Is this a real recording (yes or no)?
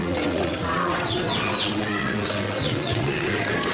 no